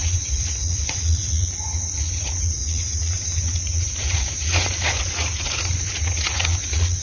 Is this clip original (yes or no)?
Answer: no